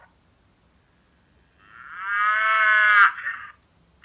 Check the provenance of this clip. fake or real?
real